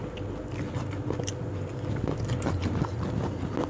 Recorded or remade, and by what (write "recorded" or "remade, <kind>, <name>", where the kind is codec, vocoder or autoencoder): recorded